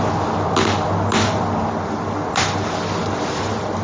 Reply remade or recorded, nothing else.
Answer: recorded